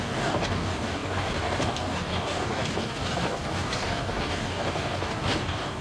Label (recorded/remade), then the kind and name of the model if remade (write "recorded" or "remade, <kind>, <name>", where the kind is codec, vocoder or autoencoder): remade, codec, DAC